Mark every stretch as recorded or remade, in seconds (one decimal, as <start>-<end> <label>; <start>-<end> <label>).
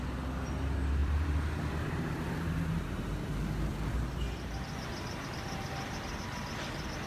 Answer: 0.0-1.0 recorded; 1.0-3.0 remade; 3.0-3.7 recorded; 3.7-5.3 remade; 5.3-7.1 recorded